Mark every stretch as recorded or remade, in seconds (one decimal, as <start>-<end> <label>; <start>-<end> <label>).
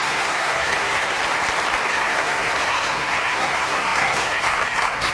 0.0-1.2 remade; 1.2-1.9 recorded; 1.9-5.1 remade